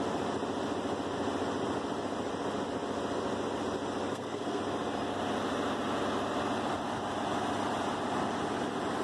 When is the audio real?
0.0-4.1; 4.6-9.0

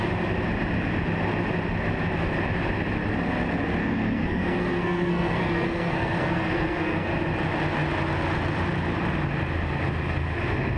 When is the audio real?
0.0-3.8; 7.1-10.8

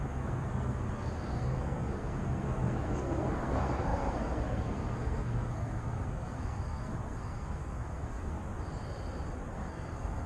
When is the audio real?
8.4-9.5

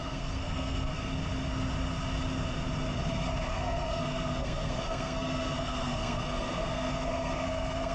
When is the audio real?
1.1-3.5

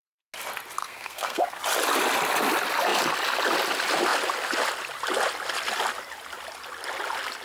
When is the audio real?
0.0-0.8; 1.6-7.4

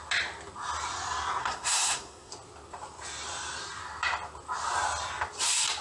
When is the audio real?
0.0-1.4; 2.3-5.8

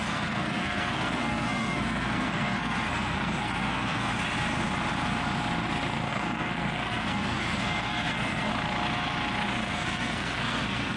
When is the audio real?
4.1-6.1; 8.5-9.7

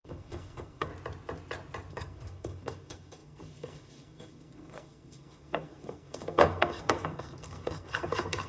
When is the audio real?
0.9-1.9